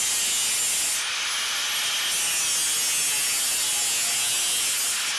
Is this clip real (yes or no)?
yes